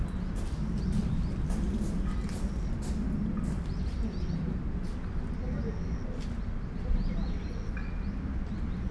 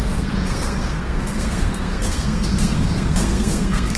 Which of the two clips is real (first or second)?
first